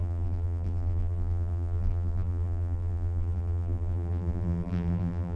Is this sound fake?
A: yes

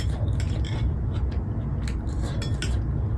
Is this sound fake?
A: no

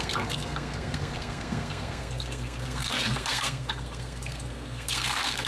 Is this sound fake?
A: yes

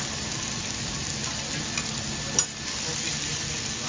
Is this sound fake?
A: no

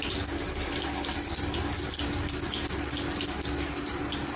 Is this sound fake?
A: no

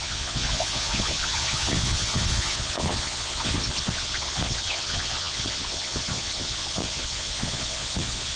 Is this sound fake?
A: yes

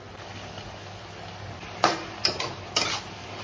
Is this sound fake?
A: no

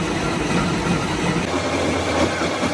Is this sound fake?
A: no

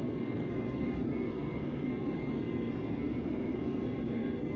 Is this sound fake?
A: yes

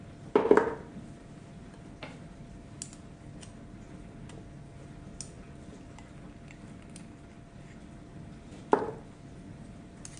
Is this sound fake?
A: no